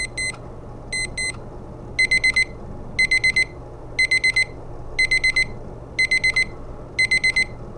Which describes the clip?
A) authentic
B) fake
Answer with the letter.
A